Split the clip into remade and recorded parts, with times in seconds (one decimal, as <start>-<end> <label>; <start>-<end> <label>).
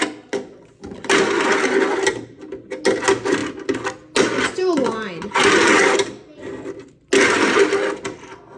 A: 0.0-8.6 recorded